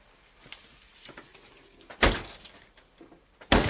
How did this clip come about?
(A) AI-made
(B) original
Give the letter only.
B